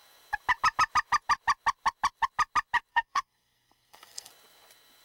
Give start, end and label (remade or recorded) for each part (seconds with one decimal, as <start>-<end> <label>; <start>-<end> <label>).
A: 0.0-2.9 recorded; 2.9-4.3 remade; 4.3-5.0 recorded